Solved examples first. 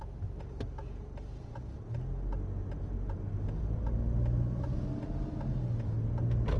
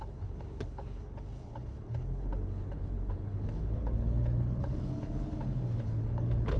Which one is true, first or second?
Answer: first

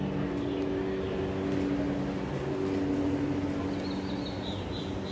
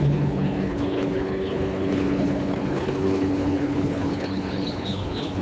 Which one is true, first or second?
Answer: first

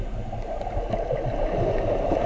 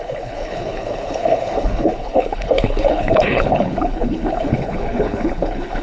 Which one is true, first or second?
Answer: first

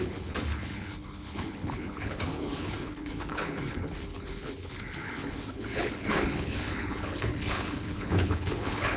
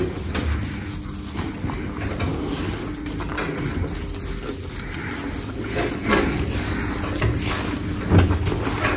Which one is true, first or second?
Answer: second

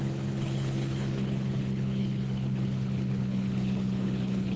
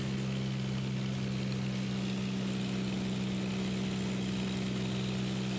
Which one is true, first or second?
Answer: second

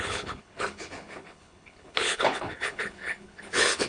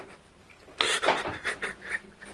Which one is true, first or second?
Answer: second